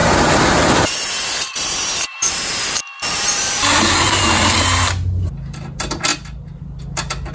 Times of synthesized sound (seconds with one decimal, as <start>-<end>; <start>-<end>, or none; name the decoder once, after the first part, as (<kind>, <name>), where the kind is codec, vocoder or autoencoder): 0.0-0.9 (vocoder, BigVGAN v2); 1.5-4.6; 6.1-6.8